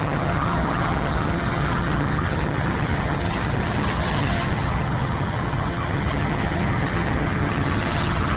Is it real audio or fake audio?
fake